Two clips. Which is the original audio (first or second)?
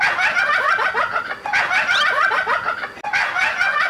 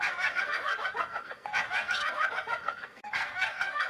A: first